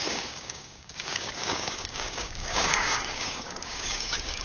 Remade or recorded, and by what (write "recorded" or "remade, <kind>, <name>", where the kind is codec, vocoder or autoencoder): remade, codec, DAC